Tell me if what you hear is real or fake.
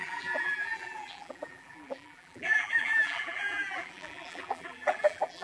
fake